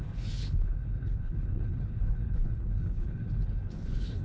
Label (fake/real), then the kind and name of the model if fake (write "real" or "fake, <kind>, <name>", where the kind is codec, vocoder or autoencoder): fake, codec, HILCodec